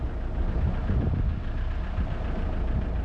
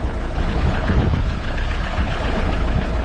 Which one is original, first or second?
first